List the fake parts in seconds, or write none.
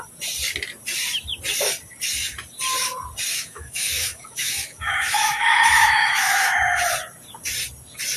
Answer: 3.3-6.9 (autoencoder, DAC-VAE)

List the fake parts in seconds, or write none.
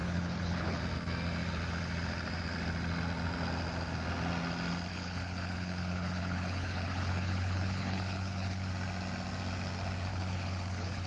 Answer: 0.0-0.8 (codec, HILCodec); 4.9-8.7; 10.1-11.1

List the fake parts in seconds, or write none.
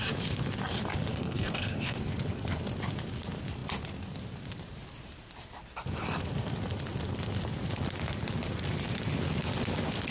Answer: 1.1-2.0 (codec, SNAC)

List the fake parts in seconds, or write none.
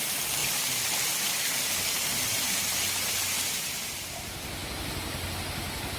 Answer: none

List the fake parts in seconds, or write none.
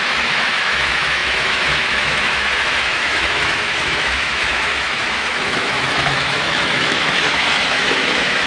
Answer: 0.0-8.5 (autoencoder, DAC-VAE)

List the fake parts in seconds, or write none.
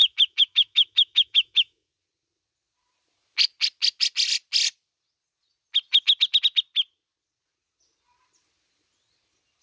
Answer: 0.0-1.9 (autoencoder, DAC-VAE)